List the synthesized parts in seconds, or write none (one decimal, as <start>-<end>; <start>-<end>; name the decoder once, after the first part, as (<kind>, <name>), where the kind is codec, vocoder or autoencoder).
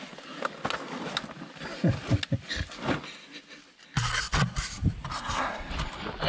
5.1-5.7 (codec, SNAC)